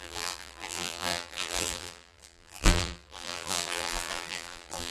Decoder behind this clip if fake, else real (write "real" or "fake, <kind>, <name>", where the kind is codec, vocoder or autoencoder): fake, vocoder, BigVGAN v2